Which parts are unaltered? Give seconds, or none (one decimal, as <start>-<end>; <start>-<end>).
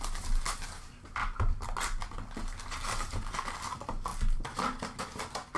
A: 0.0-5.6